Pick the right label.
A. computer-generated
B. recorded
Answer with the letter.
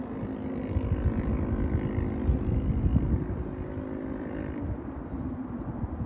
B